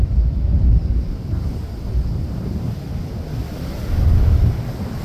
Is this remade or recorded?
recorded